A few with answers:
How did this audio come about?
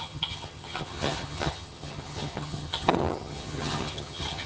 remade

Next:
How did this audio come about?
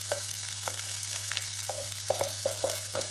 remade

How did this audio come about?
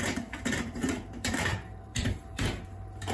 remade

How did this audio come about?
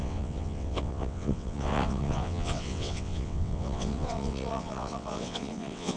remade